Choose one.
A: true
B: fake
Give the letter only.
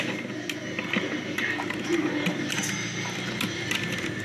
A